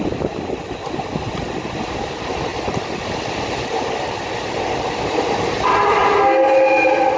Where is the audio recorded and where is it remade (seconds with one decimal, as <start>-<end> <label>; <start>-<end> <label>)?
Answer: 0.0-7.2 recorded